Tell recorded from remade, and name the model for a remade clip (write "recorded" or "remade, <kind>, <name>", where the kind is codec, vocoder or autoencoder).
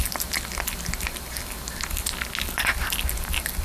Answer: recorded